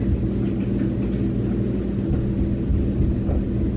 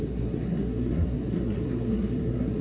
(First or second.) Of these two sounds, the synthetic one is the second